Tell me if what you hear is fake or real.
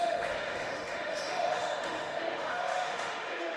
fake